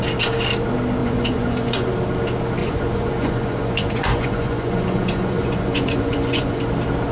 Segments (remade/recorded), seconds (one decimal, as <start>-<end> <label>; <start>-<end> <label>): 0.0-1.0 recorded; 1.0-1.9 remade; 1.9-2.6 recorded; 2.6-6.6 remade; 6.6-7.1 recorded